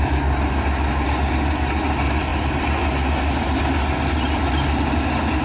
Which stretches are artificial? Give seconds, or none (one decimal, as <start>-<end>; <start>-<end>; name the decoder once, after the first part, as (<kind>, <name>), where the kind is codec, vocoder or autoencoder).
none